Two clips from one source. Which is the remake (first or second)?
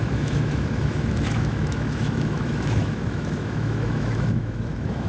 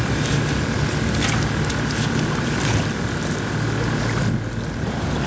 first